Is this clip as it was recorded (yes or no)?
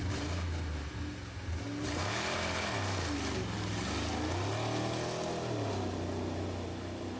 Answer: yes